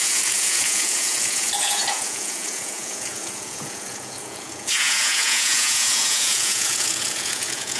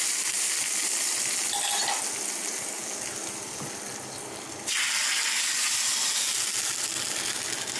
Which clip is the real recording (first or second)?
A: second